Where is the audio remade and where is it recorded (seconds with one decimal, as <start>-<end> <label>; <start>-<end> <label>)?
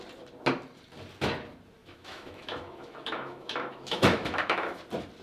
0.0-1.8 recorded; 1.8-4.8 remade; 4.8-5.2 recorded